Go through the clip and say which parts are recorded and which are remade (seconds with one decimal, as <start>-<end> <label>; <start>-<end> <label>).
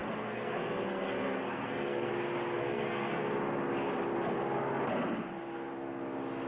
0.0-2.1 remade; 2.1-2.6 recorded; 2.6-3.2 remade; 3.2-6.5 recorded